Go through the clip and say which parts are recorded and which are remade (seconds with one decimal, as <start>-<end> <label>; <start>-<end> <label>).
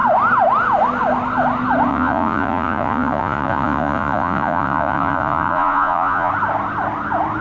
0.0-1.9 recorded; 1.9-6.3 remade; 6.3-7.4 recorded